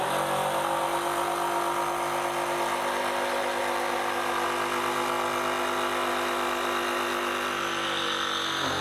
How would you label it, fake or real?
real